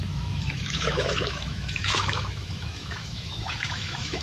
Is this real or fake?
fake